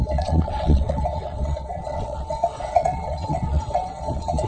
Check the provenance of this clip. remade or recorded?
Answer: remade